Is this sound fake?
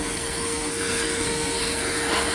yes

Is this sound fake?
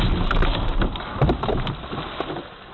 no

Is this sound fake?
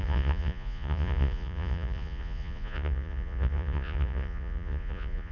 yes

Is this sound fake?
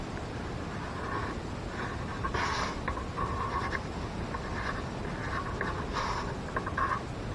no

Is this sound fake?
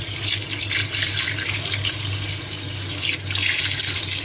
no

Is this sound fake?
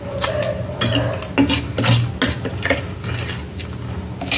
no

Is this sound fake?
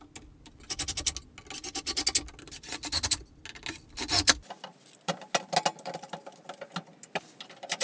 no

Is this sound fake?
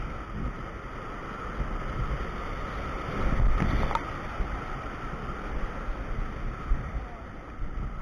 no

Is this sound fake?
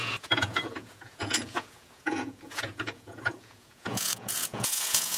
yes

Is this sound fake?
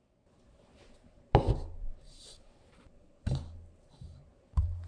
no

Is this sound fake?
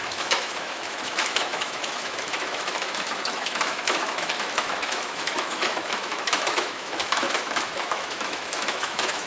yes